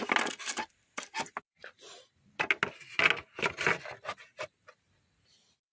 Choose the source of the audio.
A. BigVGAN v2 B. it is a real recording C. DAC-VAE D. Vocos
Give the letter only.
B